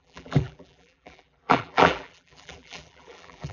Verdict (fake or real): fake